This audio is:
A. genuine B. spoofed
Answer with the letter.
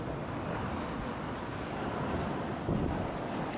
A